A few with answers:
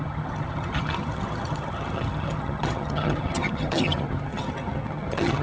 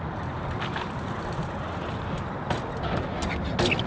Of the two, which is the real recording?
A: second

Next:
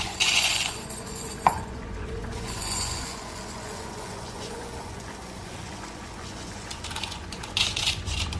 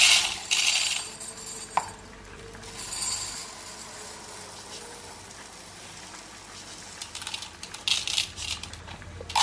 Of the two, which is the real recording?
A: second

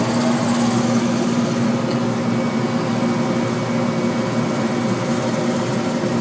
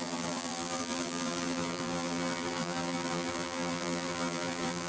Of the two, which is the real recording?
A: first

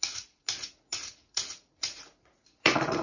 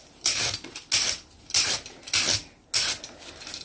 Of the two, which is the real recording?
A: second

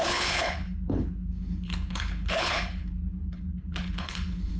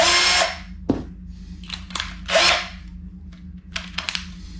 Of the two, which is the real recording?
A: second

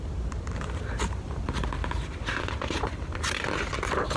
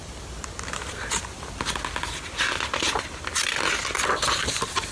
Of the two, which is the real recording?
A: second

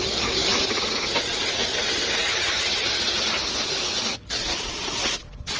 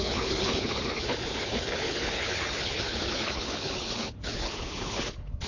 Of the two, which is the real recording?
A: first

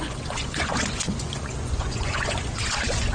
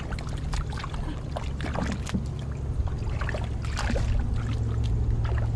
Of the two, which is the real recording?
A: second